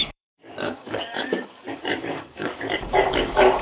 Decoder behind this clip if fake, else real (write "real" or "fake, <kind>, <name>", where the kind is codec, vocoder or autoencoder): fake, codec, DAC